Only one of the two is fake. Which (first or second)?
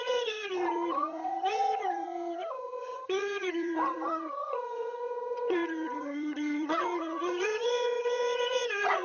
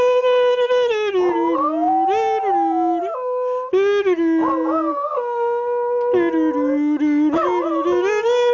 first